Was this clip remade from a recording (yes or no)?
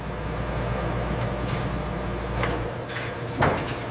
no